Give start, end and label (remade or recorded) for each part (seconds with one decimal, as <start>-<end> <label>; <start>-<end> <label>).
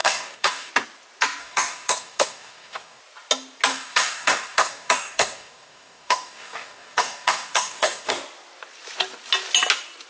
0.0-0.7 remade; 0.7-1.4 recorded; 1.4-3.0 remade; 3.0-3.7 recorded; 3.7-8.1 remade; 8.1-10.1 recorded